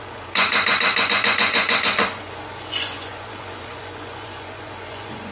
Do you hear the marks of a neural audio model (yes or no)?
yes